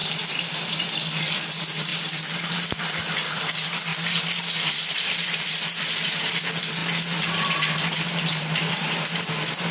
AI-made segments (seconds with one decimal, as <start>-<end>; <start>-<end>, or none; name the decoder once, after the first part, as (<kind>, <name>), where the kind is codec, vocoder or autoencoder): 0.0-0.8 (vocoder, BigVGAN v2); 1.9-3.0; 3.9-6.3